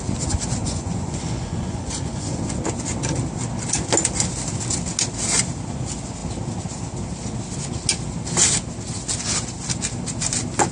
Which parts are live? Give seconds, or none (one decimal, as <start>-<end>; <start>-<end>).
0.0-0.6; 2.6-10.7